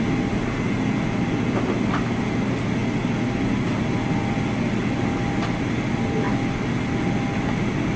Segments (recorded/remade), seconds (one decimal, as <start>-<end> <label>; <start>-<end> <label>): 0.0-8.0 recorded